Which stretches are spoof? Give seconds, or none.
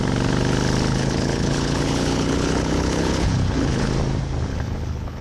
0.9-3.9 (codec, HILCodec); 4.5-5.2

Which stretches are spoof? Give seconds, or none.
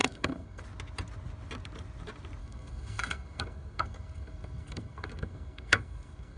0.0-0.6 (codec, SNAC); 2.4-6.4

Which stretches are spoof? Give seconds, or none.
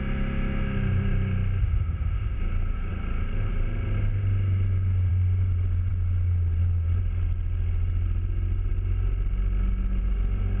1.6-2.4 (codec, ZipCodec)